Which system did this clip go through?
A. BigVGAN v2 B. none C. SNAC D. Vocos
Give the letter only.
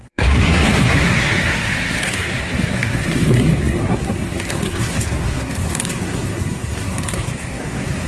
C